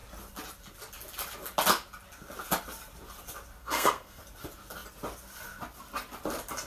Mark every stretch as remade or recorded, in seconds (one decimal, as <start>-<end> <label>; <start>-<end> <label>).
0.0-3.6 recorded; 3.6-4.2 remade; 4.2-6.7 recorded